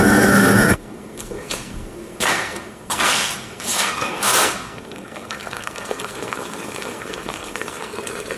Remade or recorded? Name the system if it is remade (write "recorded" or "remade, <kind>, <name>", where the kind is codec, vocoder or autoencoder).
remade, codec, SNAC